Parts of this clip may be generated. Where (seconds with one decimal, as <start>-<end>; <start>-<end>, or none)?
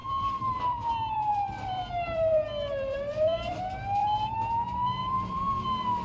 0.0-3.6; 4.0-5.4